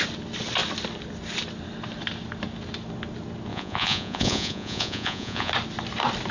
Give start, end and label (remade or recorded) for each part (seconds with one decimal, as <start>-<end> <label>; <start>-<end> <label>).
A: 0.0-3.5 recorded; 3.5-5.5 remade; 5.5-6.3 recorded